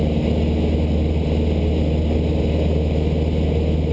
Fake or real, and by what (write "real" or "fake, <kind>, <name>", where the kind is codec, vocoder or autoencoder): real